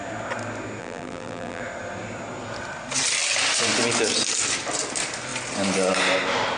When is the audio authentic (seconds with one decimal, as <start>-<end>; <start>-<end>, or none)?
0.0-0.8; 1.6-6.6

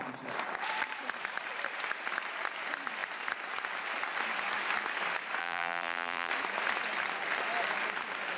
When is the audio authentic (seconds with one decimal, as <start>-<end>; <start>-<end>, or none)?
0.0-5.4; 6.3-8.4

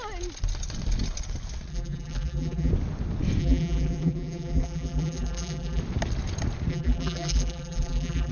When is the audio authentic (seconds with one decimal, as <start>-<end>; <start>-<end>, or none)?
0.0-1.7; 2.7-3.4; 5.8-6.7

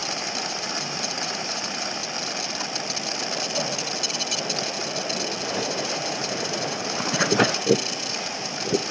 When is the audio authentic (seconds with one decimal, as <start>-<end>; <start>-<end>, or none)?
2.0-5.4; 7.6-8.1

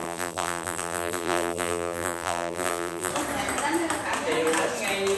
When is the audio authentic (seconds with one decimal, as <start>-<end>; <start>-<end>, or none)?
3.1-5.2

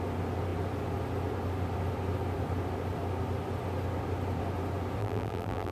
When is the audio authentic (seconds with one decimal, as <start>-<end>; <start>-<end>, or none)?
0.0-5.0

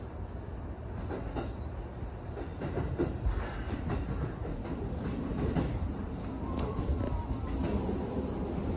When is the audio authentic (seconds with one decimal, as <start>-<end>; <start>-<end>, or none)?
0.0-2.5; 6.9-8.8